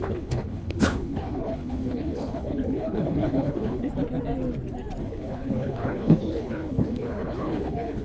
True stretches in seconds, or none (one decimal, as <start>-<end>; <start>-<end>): 3.9-5.0

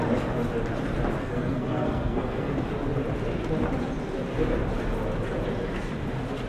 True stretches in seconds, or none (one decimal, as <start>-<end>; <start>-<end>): 0.0-1.2; 2.5-6.5

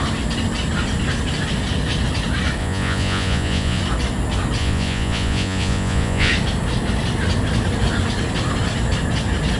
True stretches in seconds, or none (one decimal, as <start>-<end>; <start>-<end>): 0.0-2.6; 3.8-4.6; 6.3-9.6

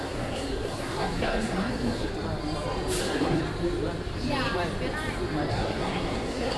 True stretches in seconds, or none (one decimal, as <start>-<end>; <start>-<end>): 2.1-3.0; 3.4-5.5

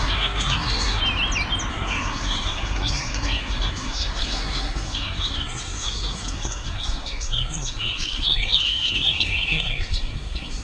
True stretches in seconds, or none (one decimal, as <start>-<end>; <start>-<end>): 1.0-1.7